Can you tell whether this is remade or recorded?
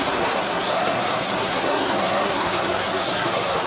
remade